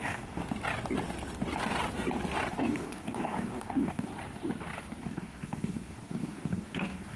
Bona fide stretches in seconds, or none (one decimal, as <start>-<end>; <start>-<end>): 0.4-2.5; 4.1-5.0